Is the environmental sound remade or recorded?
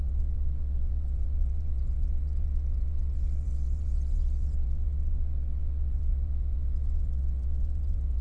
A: remade